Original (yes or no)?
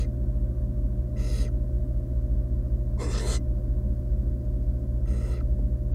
yes